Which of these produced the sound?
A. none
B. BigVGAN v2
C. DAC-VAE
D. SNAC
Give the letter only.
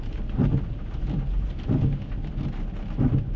A